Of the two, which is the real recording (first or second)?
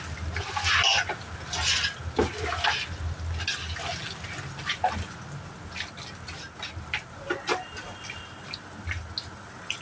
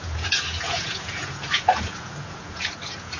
first